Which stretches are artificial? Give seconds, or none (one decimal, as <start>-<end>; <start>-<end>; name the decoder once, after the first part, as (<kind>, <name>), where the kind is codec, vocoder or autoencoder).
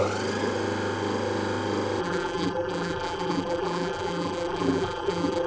2.0-5.5 (vocoder, BigVGAN v2)